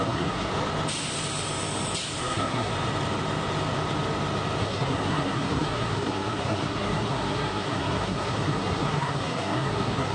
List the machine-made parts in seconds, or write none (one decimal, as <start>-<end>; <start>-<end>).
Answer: 0.0-0.5; 2.2-2.7; 4.6-10.1